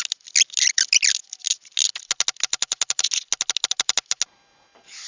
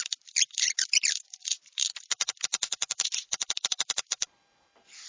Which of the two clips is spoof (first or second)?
second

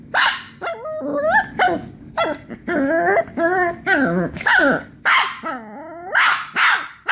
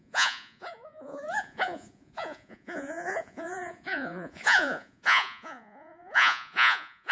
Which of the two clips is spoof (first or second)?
second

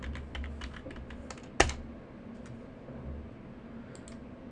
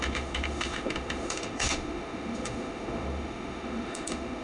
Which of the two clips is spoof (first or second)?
second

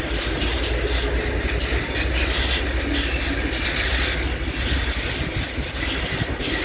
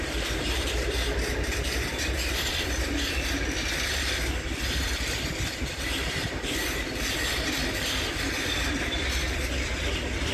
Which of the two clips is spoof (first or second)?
second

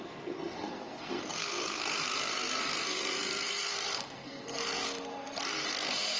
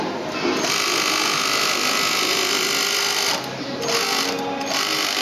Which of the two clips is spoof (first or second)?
first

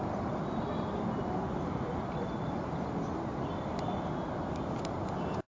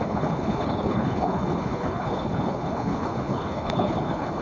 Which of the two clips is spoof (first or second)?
second